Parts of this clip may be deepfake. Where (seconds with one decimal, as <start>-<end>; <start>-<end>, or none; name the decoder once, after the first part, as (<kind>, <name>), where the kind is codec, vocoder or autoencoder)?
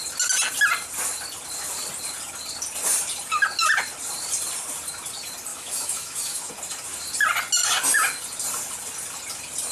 5.5-6.5 (autoencoder, DAC-VAE)